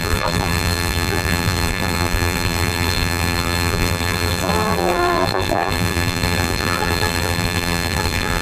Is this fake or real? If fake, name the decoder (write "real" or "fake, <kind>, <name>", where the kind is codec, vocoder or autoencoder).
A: fake, vocoder, BigVGAN v2